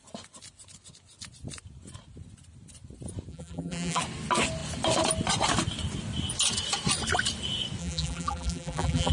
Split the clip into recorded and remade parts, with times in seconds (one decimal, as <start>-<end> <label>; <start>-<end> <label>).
0.0-3.3 recorded; 3.3-4.0 remade; 4.0-7.8 recorded; 7.8-9.1 remade